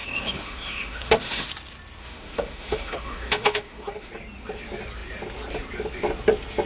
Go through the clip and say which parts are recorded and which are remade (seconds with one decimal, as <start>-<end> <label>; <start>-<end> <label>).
0.0-1.5 remade; 1.5-2.0 recorded; 2.0-4.1 remade; 4.1-6.7 recorded